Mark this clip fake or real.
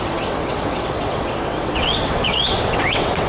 fake